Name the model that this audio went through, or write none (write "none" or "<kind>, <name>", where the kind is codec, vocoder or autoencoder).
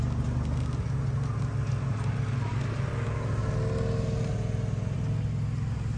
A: none